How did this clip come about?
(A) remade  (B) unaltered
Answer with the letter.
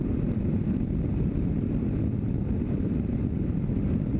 A